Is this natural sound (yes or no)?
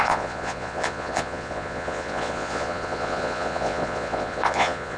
no